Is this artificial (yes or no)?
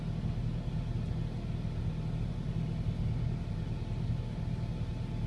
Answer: no